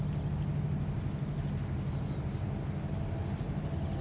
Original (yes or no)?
yes